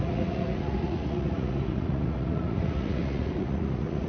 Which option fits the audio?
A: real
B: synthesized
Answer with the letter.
B